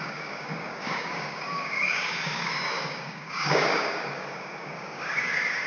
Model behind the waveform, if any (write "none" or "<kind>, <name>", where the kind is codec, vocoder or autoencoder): codec, DAC